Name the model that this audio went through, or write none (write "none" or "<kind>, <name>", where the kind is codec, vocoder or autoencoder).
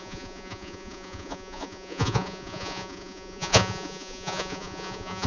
vocoder, Vocos